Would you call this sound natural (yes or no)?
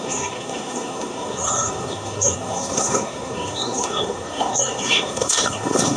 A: no